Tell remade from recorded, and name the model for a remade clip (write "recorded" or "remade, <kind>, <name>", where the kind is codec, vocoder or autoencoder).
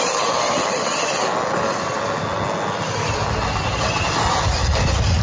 recorded